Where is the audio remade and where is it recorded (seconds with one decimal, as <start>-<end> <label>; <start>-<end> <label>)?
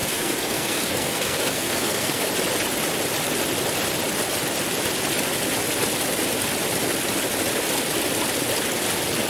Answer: 0.0-2.3 remade; 2.3-9.3 recorded